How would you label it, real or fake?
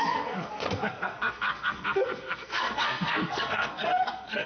fake